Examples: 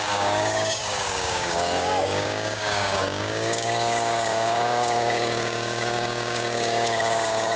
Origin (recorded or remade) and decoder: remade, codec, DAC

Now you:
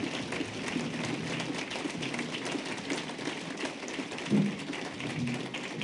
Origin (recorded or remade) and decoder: recorded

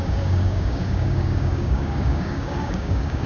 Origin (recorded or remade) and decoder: remade, codec, DAC